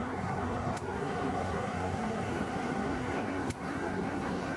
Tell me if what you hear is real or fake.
fake